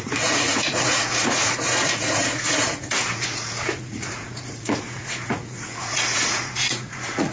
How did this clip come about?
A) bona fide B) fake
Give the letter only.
B